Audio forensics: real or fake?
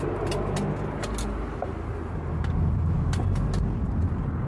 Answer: real